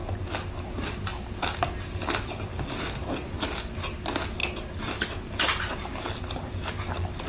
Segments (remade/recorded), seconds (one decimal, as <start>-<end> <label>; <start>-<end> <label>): 0.0-7.3 recorded